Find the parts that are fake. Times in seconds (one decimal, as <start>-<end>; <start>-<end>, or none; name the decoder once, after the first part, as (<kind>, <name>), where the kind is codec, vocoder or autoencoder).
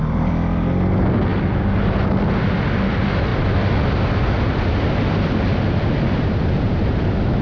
none